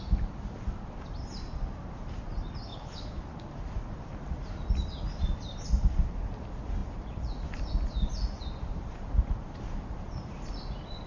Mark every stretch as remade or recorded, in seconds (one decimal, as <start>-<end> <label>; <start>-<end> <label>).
0.0-2.7 recorded; 2.7-3.2 remade; 3.2-11.1 recorded